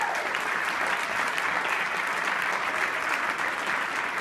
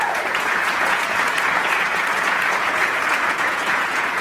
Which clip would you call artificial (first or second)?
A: second